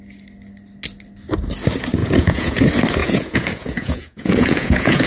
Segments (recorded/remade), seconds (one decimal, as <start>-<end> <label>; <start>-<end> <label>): 0.0-2.0 recorded; 2.0-2.6 remade; 2.6-3.0 recorded; 3.0-5.1 remade